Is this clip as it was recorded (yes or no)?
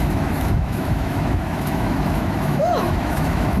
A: no